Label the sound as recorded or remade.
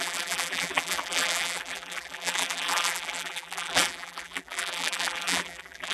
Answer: remade